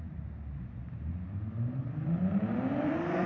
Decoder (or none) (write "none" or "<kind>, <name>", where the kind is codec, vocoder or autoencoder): none